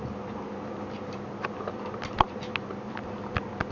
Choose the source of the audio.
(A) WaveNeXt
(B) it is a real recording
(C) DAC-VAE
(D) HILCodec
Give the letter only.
B